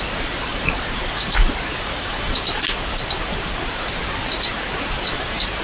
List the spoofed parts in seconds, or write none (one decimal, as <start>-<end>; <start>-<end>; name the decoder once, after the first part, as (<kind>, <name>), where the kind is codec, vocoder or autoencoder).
0.5-3.9 (vocoder, BigVGAN v2); 4.5-5.6